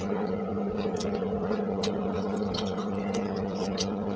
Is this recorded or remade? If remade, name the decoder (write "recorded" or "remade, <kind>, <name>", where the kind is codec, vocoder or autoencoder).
remade, vocoder, WaveNeXt